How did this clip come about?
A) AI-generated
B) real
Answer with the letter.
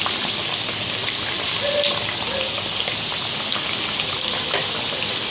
B